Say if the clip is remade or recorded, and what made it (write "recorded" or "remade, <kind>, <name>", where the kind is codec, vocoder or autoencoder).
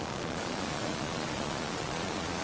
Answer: remade, vocoder, Vocos